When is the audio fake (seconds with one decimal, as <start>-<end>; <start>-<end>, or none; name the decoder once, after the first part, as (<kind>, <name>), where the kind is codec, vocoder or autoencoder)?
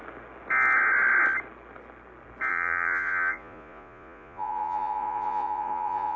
2.5-6.2 (vocoder, Vocos)